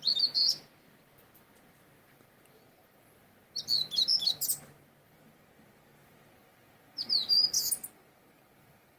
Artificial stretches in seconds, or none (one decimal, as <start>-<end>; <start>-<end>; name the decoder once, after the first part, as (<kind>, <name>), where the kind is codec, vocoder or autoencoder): none